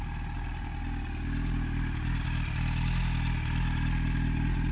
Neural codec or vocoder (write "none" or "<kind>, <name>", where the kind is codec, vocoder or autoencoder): none